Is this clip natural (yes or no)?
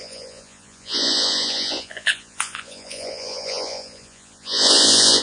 no